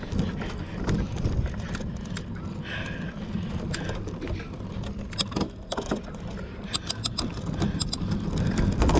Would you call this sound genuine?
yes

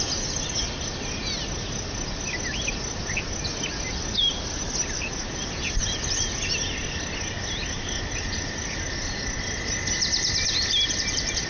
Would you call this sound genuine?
yes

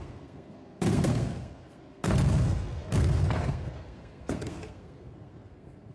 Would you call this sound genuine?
no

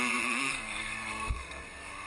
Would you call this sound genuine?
no